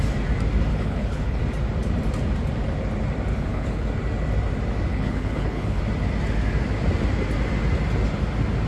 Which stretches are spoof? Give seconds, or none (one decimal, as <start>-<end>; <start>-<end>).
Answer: 0.7-1.4; 3.3-3.9; 4.9-5.8